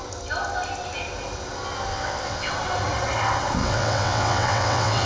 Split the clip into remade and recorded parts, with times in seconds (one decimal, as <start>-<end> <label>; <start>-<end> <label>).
0.0-1.9 recorded; 1.9-2.5 remade; 2.5-3.6 recorded; 3.6-5.1 remade